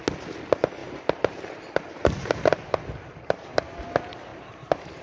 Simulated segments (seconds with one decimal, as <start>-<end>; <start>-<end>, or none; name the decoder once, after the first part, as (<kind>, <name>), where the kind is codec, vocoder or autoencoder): 0.8-3.8 (vocoder, BigVGAN v2); 4.3-5.0